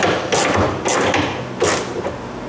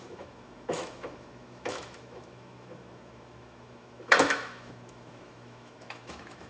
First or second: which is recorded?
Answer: first